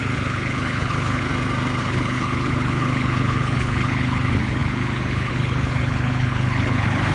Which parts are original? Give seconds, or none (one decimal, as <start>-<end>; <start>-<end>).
1.3-1.8

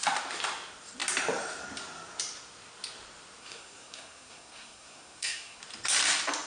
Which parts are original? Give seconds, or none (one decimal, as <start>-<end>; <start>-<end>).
0.0-3.4; 5.6-6.5

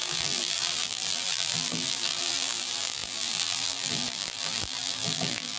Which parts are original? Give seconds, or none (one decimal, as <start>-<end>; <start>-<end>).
none

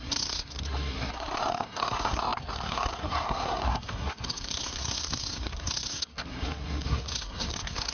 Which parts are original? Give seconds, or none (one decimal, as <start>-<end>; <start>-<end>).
none

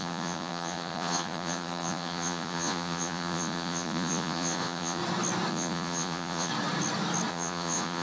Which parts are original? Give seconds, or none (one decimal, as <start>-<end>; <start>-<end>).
5.0-5.5; 6.5-7.3

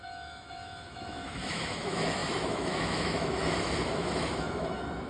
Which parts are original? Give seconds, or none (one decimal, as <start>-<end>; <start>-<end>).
none